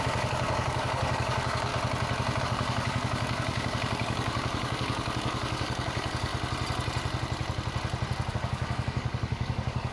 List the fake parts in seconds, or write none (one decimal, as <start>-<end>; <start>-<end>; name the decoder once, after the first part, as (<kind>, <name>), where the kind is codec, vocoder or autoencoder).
0.0-1.7 (codec, DAC); 2.4-6.3; 8.3-9.9